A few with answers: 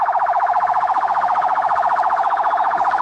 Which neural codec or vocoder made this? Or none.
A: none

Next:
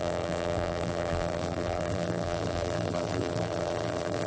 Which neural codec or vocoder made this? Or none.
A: vocoder, BigVGAN v2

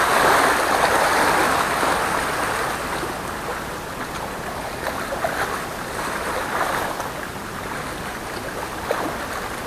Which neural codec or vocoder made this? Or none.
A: none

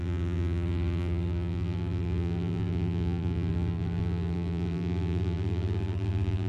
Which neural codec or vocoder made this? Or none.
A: vocoder, BigVGAN v2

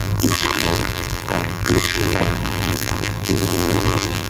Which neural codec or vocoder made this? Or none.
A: vocoder, BigVGAN v2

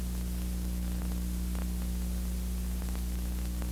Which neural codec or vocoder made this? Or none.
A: none